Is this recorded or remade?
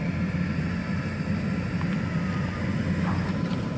recorded